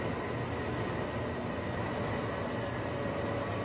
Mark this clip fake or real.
real